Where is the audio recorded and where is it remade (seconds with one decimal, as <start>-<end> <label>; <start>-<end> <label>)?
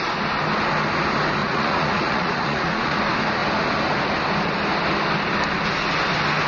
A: 0.0-1.4 recorded; 1.4-3.0 remade; 3.0-6.5 recorded